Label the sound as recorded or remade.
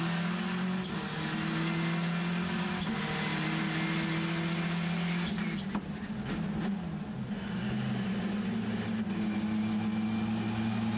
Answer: recorded